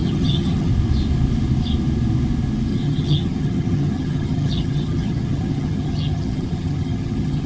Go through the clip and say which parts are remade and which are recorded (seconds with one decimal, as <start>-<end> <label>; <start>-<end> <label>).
0.0-0.7 remade; 0.7-2.7 recorded; 2.7-7.5 remade